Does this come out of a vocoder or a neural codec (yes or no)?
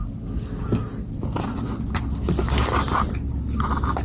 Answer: no